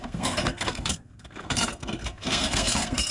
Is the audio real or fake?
fake